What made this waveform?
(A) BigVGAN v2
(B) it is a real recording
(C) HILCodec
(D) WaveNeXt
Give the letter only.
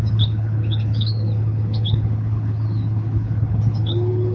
C